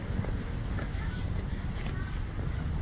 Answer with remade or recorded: recorded